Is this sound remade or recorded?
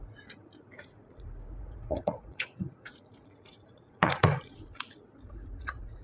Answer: remade